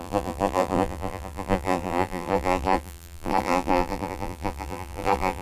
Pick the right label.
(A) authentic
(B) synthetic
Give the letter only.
B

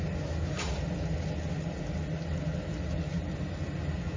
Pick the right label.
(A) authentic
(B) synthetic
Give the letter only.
A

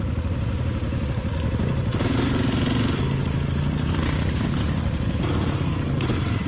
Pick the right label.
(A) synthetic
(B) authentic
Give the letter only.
B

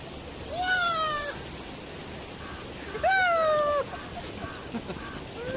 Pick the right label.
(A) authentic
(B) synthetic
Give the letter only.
A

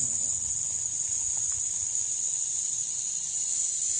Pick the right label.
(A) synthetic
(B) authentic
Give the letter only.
B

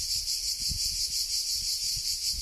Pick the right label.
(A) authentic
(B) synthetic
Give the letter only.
A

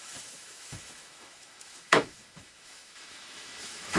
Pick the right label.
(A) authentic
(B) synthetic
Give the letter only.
B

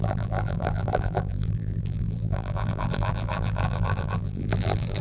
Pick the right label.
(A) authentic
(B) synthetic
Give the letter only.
B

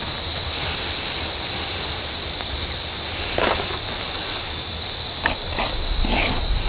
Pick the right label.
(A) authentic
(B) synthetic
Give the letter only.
B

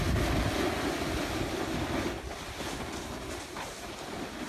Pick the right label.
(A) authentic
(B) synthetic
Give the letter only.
A